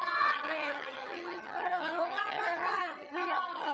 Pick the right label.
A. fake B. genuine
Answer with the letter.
A